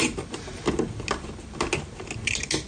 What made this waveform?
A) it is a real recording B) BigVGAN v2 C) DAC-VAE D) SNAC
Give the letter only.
A